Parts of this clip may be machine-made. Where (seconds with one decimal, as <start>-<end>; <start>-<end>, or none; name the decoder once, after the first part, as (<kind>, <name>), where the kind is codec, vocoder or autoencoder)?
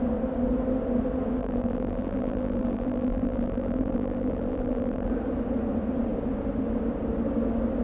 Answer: 1.4-5.1 (vocoder, BigVGAN v2)